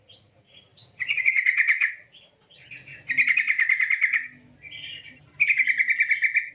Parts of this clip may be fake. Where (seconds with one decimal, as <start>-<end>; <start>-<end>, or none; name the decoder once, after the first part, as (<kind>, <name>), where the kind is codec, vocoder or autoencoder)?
0.0-2.9 (vocoder, Vocos)